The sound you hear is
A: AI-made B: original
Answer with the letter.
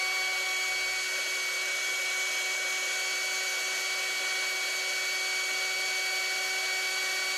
B